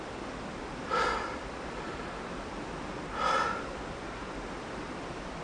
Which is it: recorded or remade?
recorded